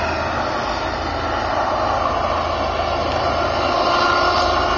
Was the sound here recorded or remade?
recorded